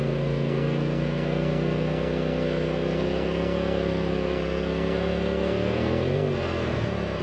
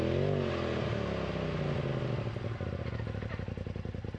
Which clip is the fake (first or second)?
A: first